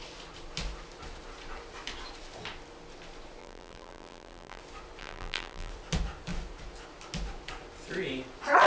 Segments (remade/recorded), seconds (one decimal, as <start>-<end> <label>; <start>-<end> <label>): 0.0-3.4 recorded; 3.4-4.6 remade; 4.6-5.0 recorded; 5.0-5.7 remade; 5.7-8.7 recorded